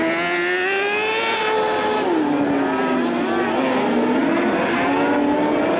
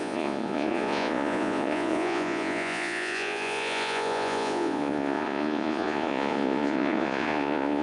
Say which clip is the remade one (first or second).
second